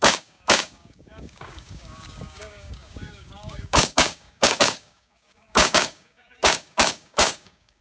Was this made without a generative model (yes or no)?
no